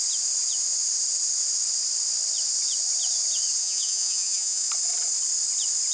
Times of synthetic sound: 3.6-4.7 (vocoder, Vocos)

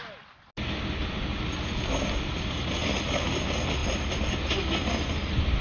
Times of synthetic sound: none

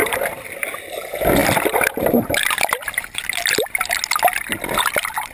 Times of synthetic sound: none